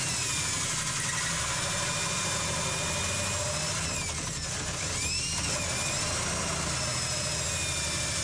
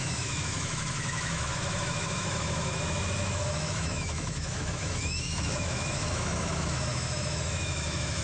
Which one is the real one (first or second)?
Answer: first